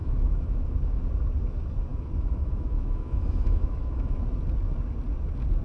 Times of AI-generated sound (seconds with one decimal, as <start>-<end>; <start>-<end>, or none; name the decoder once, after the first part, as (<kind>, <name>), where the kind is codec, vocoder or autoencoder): 0.0-1.0 (autoencoder, DAC-VAE); 1.9-4.1

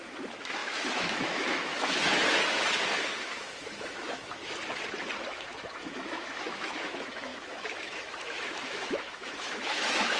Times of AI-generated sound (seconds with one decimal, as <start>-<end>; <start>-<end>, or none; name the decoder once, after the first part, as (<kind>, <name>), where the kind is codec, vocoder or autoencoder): 0.0-4.6 (autoencoder, DAC-VAE); 5.3-10.2

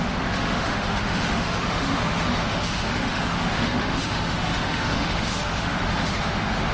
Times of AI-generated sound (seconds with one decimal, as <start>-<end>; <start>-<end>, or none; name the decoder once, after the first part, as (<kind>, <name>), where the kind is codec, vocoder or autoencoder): 0.0-6.7 (autoencoder, DAC-VAE)